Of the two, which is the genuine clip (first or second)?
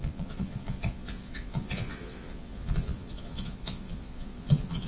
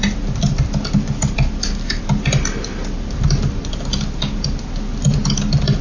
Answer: second